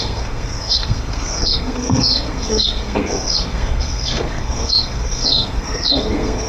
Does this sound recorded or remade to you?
remade